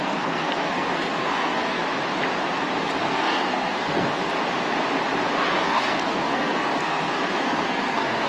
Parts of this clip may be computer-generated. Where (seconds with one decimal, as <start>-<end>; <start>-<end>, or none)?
0.0-1.8; 3.0-4.2; 5.4-8.3